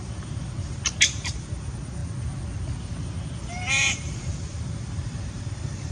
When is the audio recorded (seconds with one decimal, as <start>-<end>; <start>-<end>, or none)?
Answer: 2.0-3.7

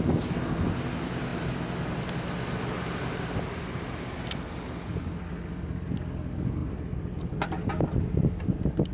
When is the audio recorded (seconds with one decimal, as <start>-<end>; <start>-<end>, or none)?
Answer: 0.0-8.9

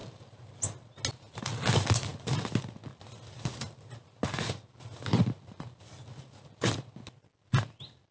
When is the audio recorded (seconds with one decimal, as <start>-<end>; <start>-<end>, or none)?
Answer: 0.0-8.1

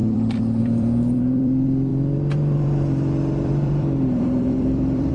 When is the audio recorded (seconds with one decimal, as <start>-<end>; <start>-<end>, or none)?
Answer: none

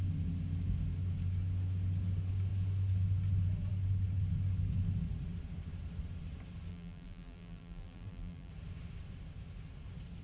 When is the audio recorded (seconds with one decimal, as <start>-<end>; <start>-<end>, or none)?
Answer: 0.0-6.7; 8.5-10.2

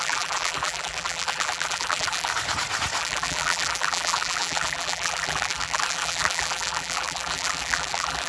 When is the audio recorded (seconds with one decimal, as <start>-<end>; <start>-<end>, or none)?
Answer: 2.3-3.0